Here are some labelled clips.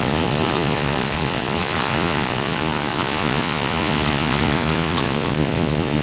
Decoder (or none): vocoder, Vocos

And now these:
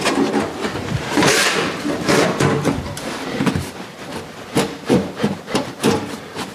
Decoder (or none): vocoder, BigVGAN v2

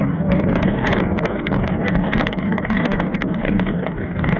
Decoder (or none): codec, DAC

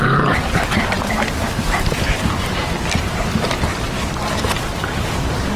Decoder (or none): none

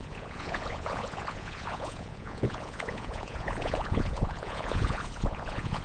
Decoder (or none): vocoder, Vocos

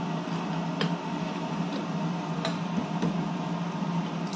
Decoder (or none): none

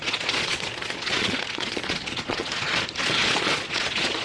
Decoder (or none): vocoder, Vocos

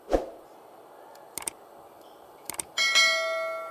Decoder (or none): none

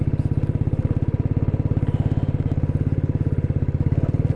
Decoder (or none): none